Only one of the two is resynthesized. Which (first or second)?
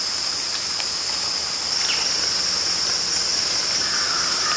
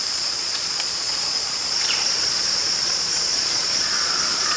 second